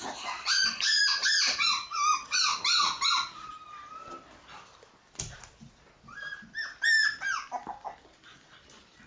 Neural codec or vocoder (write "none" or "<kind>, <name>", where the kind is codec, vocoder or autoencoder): none